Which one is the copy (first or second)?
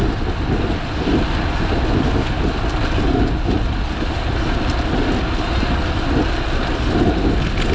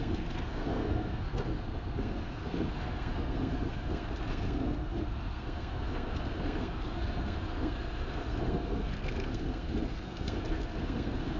second